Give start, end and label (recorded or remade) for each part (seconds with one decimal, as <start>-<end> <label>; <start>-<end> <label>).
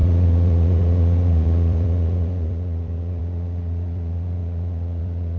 0.0-5.4 remade